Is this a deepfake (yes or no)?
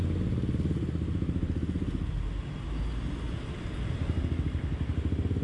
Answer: no